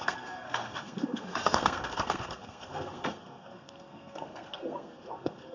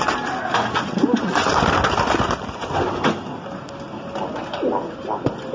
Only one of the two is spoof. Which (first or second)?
first